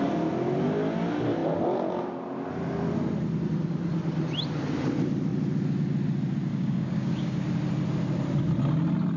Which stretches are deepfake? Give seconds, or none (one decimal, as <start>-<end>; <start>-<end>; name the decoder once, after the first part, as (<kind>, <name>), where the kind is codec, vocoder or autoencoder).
6.5-7.4 (codec, DAC)